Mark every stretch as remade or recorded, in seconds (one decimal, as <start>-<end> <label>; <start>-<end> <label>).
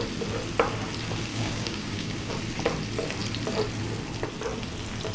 0.0-1.3 recorded; 1.3-2.3 remade; 2.3-5.1 recorded